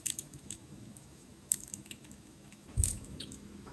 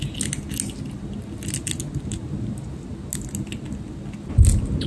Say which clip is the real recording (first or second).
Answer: second